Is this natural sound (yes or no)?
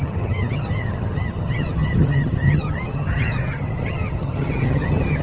no